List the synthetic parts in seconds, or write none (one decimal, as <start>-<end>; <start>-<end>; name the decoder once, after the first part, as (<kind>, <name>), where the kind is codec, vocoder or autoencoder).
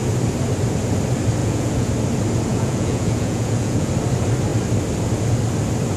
1.4-1.9 (vocoder, Vocos); 2.5-3.9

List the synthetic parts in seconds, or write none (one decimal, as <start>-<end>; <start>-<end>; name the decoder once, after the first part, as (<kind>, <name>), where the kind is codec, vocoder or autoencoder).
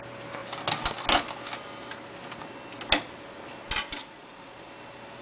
4.0-4.7 (vocoder, Vocos)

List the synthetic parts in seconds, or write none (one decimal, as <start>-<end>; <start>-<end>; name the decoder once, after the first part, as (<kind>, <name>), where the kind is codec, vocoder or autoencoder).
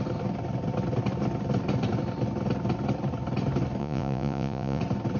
3.8-4.8 (vocoder, Vocos)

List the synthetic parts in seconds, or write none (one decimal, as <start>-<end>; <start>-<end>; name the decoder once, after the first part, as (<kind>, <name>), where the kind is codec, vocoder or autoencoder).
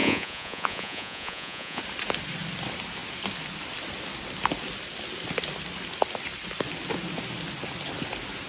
0.0-1.8 (vocoder, Vocos)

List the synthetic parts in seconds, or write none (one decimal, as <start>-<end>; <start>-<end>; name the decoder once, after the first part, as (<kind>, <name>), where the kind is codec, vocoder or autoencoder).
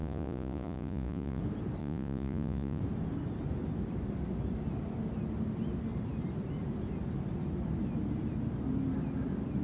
0.0-1.4 (vocoder, Vocos); 1.8-2.8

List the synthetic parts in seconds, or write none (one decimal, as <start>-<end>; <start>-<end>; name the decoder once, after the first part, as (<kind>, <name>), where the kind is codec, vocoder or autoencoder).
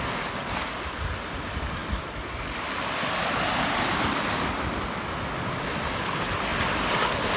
none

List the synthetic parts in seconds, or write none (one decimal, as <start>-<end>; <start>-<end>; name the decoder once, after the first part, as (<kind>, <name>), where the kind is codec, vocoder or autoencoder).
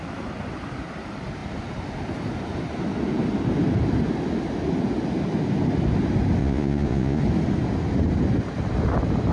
6.4-7.2 (vocoder, Vocos)